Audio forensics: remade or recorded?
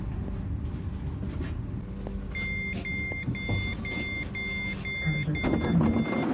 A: recorded